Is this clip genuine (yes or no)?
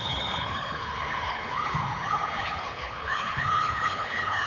no